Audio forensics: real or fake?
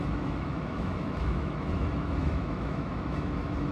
fake